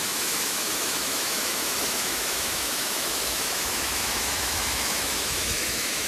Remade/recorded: remade